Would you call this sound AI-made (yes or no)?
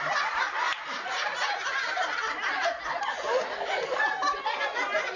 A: no